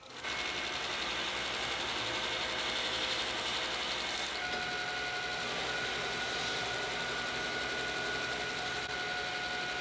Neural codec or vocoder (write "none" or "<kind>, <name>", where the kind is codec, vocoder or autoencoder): none